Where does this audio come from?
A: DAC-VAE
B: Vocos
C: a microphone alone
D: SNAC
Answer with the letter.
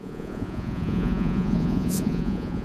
B